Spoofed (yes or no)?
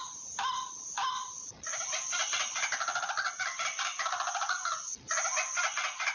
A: no